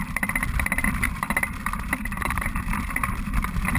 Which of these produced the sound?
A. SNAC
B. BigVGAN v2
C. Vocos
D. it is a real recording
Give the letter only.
B